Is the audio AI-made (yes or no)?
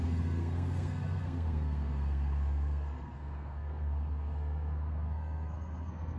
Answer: yes